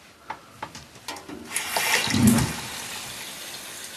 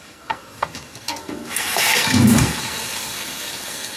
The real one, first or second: first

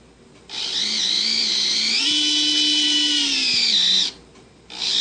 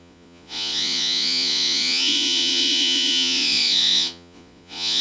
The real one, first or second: first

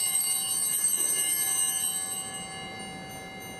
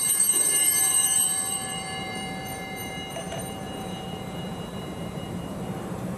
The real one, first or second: first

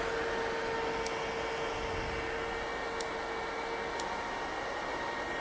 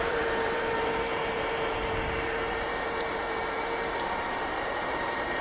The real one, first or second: first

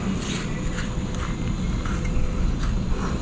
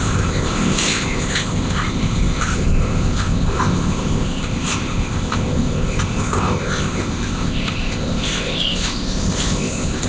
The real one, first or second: first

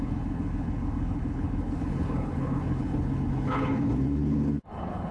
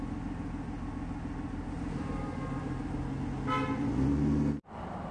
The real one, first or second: second